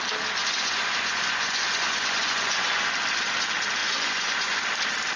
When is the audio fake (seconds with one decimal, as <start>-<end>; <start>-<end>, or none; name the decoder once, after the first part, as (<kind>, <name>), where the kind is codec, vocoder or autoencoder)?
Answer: 0.4-2.9 (vocoder, Vocos); 3.8-4.6